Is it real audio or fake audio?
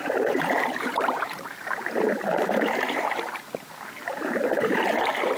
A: fake